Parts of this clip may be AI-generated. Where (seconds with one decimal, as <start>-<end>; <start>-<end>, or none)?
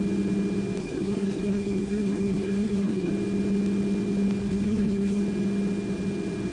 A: 0.8-3.1; 4.4-5.2